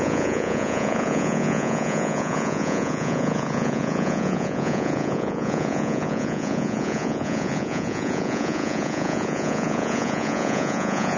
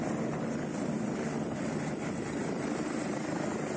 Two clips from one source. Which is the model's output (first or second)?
first